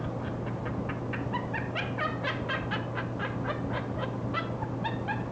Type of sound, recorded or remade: recorded